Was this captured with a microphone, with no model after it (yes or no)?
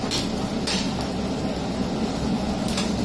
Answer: yes